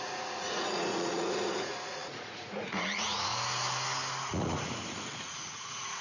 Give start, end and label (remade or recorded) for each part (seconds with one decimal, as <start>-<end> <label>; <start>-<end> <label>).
0.0-3.3 remade; 3.3-4.1 recorded; 4.1-6.0 remade